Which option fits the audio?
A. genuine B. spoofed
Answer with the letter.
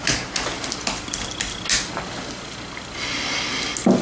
A